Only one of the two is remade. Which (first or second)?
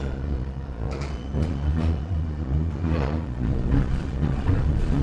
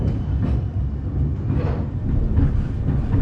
first